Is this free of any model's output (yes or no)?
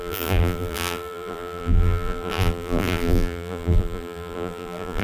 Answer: no